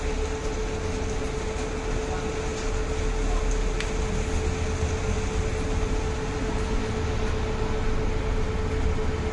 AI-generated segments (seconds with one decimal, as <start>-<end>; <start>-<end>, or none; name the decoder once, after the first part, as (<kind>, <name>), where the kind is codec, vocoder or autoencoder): none